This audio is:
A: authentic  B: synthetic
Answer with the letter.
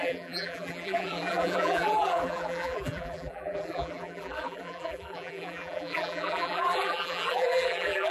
B